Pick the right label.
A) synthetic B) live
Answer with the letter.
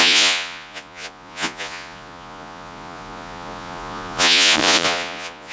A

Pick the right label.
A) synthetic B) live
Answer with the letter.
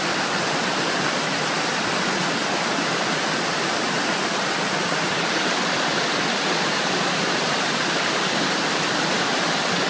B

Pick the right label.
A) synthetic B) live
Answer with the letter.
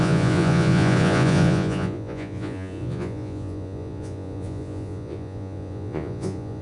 A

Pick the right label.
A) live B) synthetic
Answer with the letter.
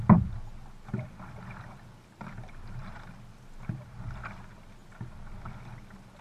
A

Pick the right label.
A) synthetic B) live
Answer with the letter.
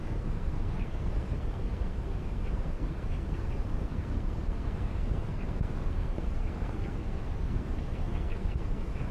A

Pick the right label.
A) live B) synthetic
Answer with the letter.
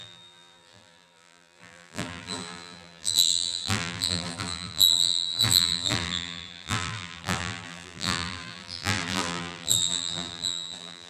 B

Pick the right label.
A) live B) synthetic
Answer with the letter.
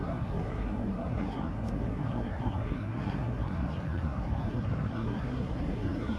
B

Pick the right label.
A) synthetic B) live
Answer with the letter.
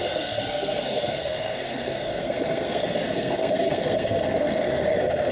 A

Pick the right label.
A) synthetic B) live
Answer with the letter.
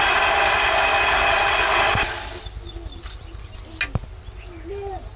B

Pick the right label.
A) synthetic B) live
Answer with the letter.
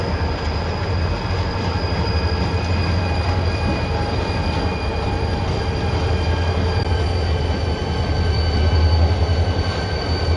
A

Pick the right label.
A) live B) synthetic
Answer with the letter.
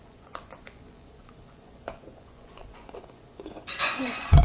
B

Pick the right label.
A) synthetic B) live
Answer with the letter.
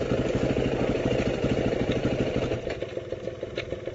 B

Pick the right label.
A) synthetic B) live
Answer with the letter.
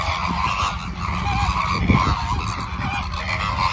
B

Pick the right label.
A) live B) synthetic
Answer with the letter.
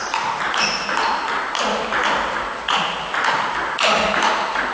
A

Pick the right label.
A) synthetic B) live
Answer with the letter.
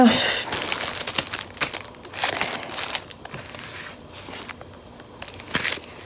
B